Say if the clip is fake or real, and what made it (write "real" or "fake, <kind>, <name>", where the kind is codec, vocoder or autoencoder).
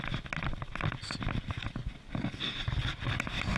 real